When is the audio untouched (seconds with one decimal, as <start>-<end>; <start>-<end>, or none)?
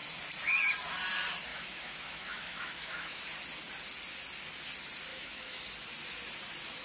0.0-1.5; 3.2-5.1; 5.6-6.8